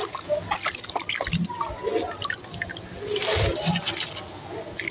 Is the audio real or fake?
real